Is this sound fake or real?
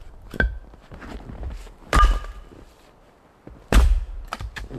fake